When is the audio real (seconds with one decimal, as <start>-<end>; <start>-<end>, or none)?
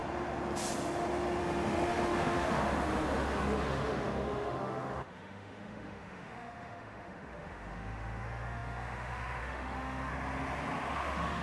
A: 0.0-1.4; 10.1-10.9